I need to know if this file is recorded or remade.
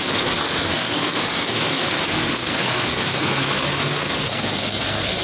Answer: remade